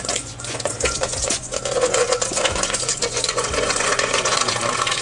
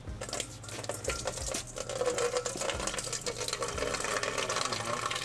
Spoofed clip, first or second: first